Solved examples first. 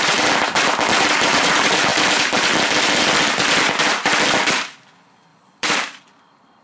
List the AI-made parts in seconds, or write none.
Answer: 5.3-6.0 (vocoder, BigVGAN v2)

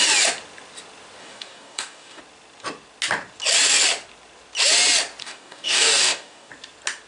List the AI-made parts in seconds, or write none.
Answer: 1.2-2.2 (codec, DAC); 5.2-6.5

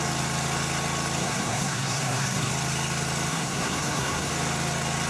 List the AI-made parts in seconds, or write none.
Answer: 1.2-2.5 (codec, SNAC); 3.3-4.3